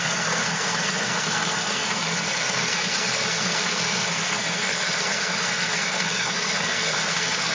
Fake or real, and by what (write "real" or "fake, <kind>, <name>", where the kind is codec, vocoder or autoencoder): fake, codec, SNAC